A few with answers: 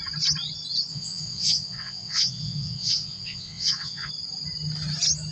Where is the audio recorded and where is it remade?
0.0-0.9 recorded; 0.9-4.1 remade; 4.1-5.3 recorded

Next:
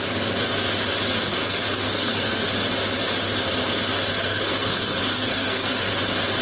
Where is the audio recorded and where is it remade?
0.0-1.3 recorded; 1.3-2.4 remade; 2.4-4.1 recorded; 4.1-5.9 remade; 5.9-6.4 recorded

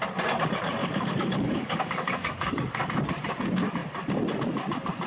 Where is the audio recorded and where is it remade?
0.0-0.8 recorded; 0.8-2.8 remade; 2.8-5.1 recorded

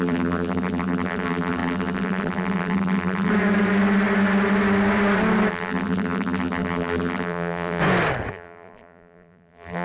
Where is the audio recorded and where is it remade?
0.0-3.3 remade; 3.3-5.5 recorded; 5.5-7.8 remade; 7.8-8.3 recorded; 8.3-9.8 remade

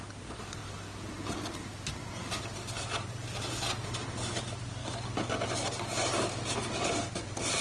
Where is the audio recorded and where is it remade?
0.0-7.6 recorded

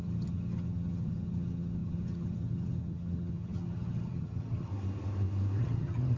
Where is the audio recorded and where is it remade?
0.0-4.7 remade; 4.7-5.6 recorded; 5.6-6.2 remade

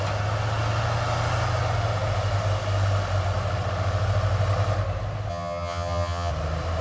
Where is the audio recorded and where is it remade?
0.0-5.3 recorded; 5.3-6.3 remade; 6.3-6.8 recorded